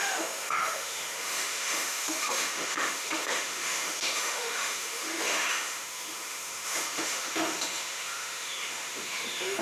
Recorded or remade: remade